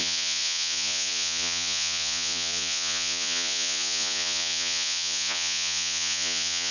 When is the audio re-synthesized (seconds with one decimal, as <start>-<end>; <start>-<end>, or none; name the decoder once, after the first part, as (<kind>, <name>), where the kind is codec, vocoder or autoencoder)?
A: 0.0-6.7 (vocoder, Vocos)